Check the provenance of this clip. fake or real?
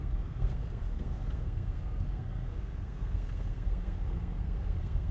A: fake